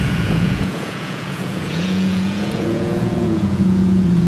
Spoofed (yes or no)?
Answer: yes